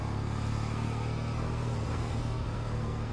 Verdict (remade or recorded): remade